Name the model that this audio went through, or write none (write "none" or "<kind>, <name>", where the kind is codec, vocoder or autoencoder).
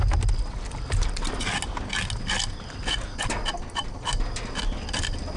none